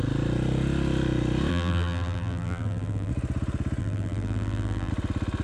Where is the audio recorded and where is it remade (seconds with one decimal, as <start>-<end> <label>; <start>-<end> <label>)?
0.0-1.5 recorded; 1.5-3.1 remade; 3.1-3.8 recorded; 3.8-4.9 remade; 4.9-5.4 recorded